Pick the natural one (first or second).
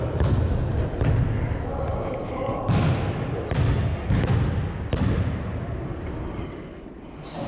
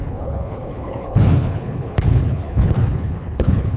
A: first